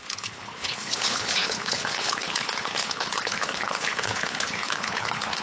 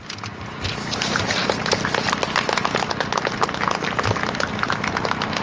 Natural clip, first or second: second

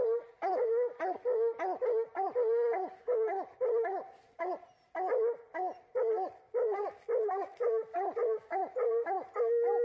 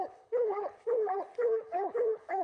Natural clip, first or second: first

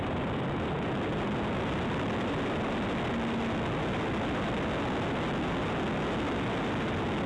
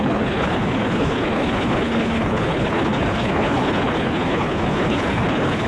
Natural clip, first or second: first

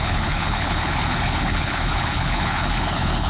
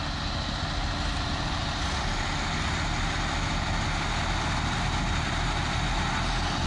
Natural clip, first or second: second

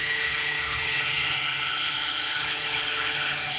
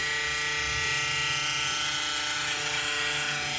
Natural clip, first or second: second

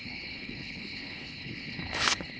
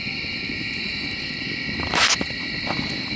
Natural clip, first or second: second